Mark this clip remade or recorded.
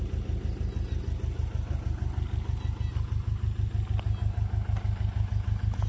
recorded